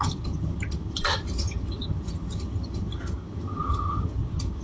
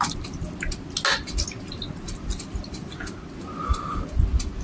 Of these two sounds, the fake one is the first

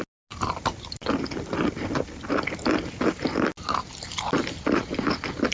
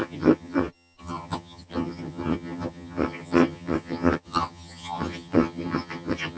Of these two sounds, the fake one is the second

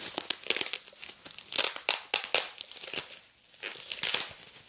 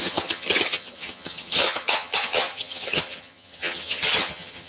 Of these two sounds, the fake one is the second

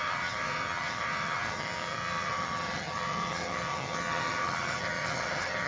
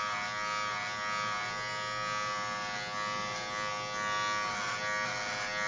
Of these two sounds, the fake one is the first